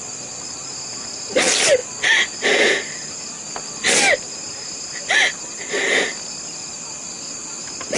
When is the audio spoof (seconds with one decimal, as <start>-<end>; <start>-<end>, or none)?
none